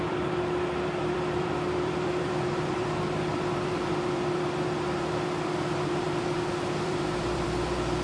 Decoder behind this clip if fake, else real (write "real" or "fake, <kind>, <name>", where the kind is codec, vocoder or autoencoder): fake, vocoder, BigVGAN v2